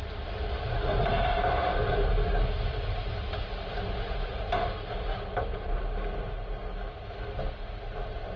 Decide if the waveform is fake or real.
real